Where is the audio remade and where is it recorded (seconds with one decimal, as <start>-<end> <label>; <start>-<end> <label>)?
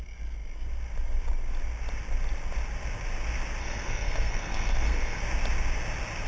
0.0-3.6 recorded; 3.6-5.2 remade; 5.2-6.3 recorded